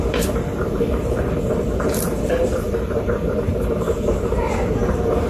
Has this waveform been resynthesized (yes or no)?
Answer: yes